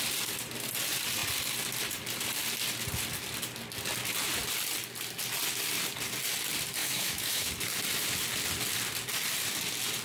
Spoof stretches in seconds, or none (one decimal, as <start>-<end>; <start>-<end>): 6.8-7.5